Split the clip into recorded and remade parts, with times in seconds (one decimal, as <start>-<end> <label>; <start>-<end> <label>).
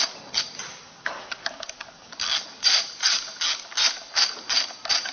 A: 0.0-0.8 recorded; 0.8-2.1 remade; 2.1-5.1 recorded